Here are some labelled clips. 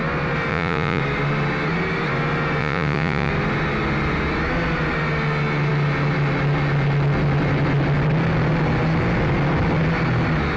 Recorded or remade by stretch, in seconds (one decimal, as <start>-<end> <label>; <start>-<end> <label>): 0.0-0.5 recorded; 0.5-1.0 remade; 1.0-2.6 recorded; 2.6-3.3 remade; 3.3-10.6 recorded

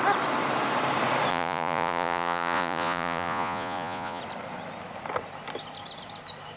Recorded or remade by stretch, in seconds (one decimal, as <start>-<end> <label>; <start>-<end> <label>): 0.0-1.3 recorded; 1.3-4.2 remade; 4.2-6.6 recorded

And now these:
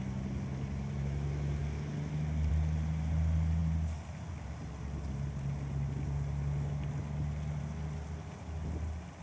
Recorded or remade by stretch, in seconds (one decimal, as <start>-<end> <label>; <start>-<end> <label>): 0.0-9.2 recorded

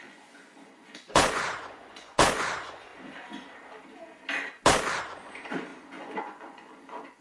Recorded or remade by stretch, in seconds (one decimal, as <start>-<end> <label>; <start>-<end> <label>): 0.0-2.9 remade; 2.9-5.0 recorded; 5.0-7.2 remade

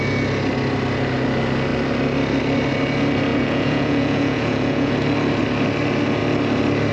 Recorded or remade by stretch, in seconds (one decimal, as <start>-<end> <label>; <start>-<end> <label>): 0.0-3.3 recorded; 3.3-4.9 remade; 4.9-6.9 recorded